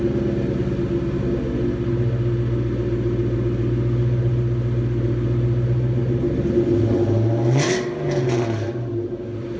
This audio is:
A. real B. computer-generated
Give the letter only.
A